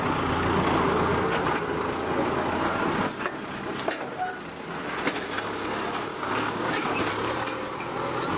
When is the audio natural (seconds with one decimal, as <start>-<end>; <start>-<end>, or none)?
0.0-6.1; 7.1-8.4